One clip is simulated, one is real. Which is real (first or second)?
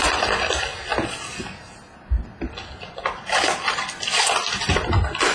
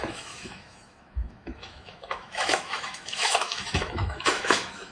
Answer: first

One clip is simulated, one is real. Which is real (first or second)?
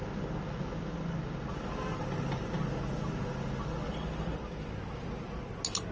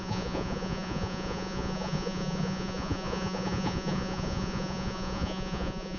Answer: first